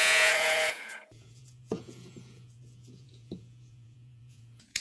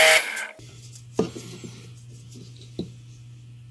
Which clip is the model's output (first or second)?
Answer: first